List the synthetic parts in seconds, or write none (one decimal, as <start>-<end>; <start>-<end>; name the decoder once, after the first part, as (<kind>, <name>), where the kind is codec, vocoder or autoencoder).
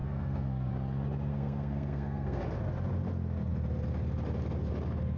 0.0-0.7 (codec, SNAC); 1.3-2.4